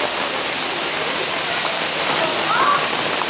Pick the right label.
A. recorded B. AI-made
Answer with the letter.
A